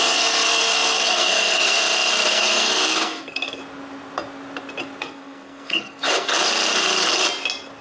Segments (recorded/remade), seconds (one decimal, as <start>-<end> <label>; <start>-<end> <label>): 0.0-1.8 remade; 1.8-2.3 recorded; 2.3-3.6 remade; 3.6-5.0 recorded; 5.0-6.3 remade; 6.3-7.8 recorded